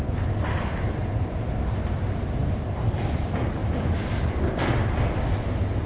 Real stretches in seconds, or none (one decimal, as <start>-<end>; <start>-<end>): 0.0-5.9